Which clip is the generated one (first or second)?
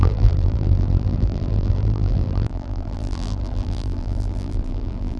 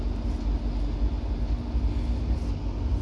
first